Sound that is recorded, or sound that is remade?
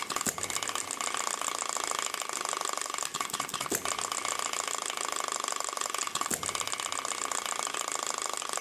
recorded